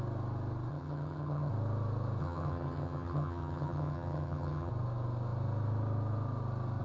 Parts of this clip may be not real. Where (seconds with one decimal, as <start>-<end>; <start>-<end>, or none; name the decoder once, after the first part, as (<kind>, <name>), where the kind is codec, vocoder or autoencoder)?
0.7-1.5 (vocoder, HiFi-GAN); 2.2-4.7